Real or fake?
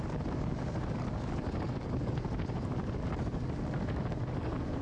fake